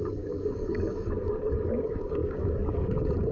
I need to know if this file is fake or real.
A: fake